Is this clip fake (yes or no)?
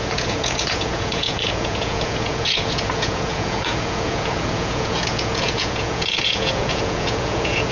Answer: yes